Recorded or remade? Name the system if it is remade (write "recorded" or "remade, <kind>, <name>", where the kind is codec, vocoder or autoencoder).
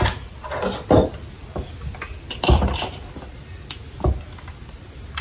recorded